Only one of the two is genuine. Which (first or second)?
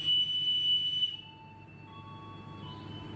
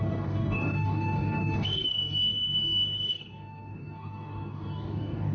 first